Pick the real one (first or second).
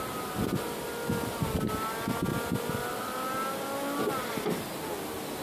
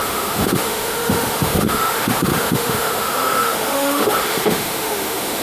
first